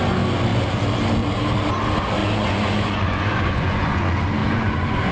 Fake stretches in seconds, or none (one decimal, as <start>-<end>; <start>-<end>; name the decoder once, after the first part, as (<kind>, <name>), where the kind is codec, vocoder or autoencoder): 2.2-4.0 (vocoder, Vocos); 4.4-5.1

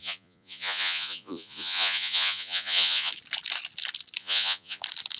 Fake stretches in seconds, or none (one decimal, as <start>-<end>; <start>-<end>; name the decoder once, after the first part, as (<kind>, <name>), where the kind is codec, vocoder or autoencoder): 0.0-3.1 (vocoder, Vocos); 4.2-4.8